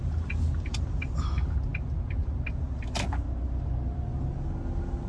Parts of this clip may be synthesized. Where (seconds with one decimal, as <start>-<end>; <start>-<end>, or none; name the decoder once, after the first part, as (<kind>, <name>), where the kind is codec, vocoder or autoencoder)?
none